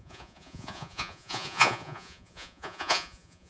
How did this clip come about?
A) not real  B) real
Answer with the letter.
A